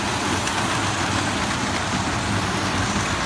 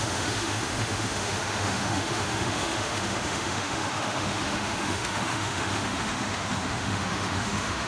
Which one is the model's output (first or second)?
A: second